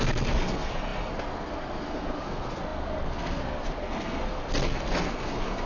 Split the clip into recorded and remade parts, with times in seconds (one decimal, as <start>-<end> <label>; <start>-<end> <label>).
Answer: 0.0-5.7 remade